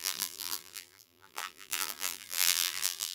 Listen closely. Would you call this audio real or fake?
fake